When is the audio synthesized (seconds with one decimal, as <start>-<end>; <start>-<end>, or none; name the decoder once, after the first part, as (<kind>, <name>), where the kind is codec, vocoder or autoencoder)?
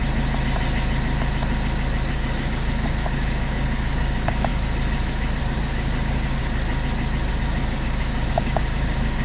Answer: 2.1-6.4 (codec, DAC); 7.3-9.2